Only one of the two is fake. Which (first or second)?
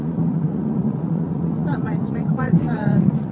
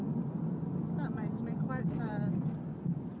first